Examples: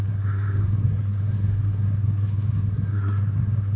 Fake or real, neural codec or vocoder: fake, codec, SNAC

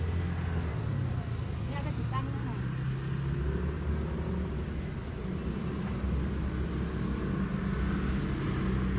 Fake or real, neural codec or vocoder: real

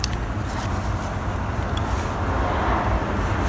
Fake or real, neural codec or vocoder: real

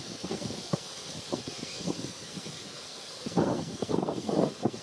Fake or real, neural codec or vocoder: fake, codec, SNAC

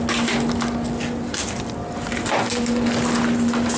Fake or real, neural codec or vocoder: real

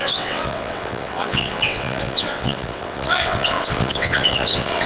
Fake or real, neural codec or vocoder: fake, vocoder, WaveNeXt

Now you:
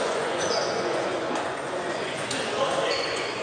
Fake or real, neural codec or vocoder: fake, vocoder, Vocos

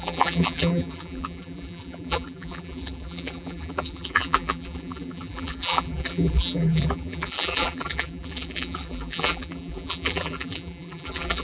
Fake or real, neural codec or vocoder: fake, vocoder, BigVGAN v2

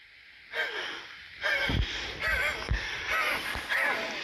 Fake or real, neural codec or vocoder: real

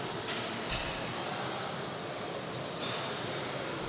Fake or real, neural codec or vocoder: fake, vocoder, BigVGAN v2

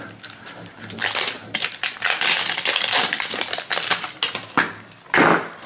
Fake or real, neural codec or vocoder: real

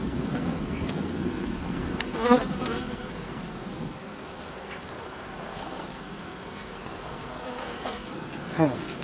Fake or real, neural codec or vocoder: fake, codec, SNAC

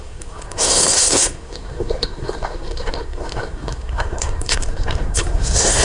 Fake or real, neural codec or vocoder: fake, codec, SNAC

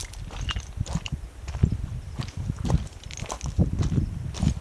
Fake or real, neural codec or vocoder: real